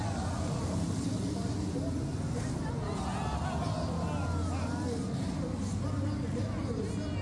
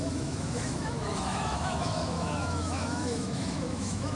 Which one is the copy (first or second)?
second